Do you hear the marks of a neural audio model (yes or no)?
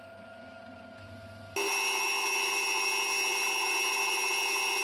no